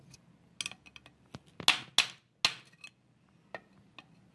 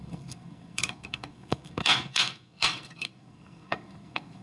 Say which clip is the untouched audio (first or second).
first